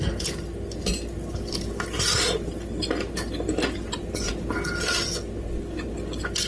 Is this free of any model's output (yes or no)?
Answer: yes